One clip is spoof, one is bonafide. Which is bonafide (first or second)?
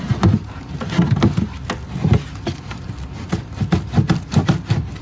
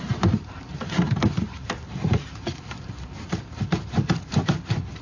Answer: first